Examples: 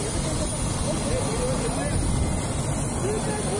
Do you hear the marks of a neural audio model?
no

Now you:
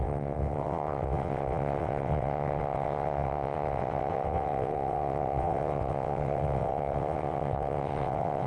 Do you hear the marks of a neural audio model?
yes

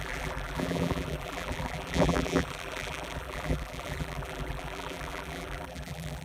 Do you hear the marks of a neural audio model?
yes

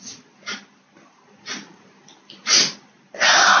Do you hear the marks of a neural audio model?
no